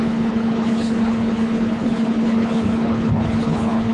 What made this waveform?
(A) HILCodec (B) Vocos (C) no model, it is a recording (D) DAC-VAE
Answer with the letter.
A